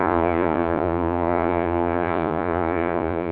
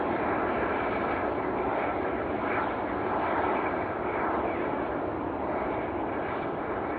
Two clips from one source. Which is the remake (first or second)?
first